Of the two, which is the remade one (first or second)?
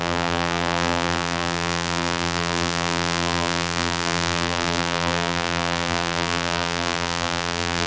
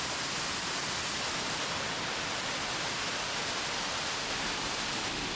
first